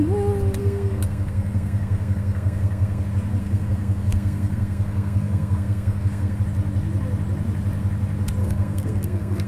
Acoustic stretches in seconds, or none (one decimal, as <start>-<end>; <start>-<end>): 0.0-0.6; 3.0-3.4; 6.4-8.4

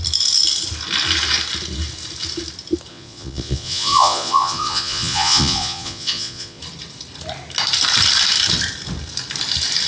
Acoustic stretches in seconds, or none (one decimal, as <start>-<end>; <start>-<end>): 0.0-2.9; 6.6-9.9

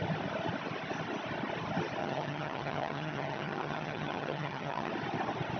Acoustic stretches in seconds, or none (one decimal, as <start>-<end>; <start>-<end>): 0.0-2.0; 4.9-5.6

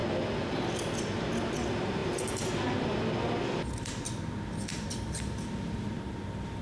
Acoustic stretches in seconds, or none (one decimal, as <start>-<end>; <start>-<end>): 0.0-4.7; 5.5-6.6